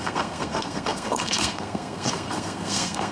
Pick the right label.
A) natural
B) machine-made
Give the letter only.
B